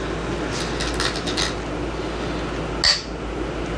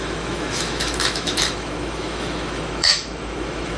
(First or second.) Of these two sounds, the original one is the first